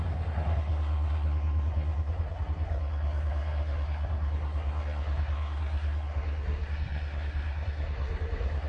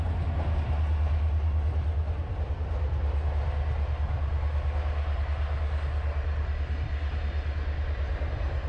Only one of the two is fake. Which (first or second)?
first